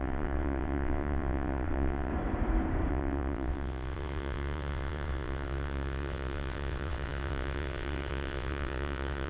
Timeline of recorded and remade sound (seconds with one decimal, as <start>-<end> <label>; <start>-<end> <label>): 0.0-2.1 remade; 2.1-2.9 recorded; 2.9-9.3 remade